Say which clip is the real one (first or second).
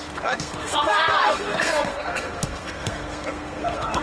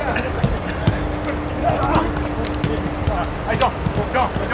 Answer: second